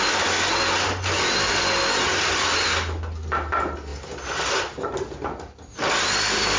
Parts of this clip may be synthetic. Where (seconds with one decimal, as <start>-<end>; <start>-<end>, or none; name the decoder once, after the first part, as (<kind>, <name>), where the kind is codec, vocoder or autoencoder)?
none